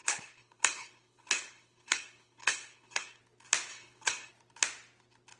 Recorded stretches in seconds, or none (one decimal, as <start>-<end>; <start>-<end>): 3.2-3.7; 4.3-5.4